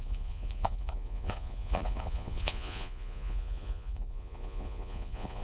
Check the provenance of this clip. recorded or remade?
remade